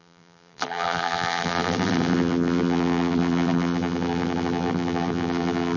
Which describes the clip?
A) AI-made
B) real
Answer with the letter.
A